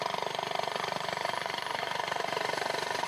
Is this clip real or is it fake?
fake